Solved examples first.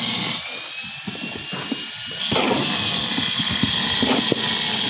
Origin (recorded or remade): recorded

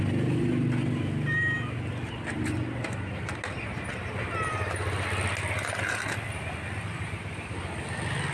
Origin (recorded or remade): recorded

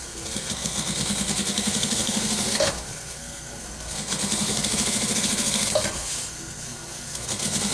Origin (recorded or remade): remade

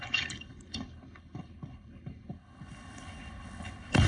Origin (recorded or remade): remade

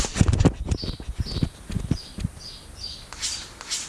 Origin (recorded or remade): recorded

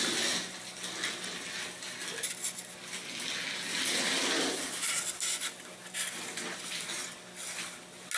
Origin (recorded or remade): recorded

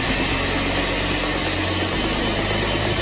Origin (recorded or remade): recorded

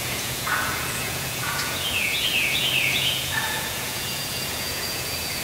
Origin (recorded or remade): remade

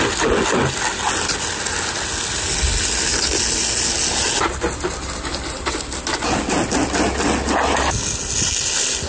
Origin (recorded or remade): recorded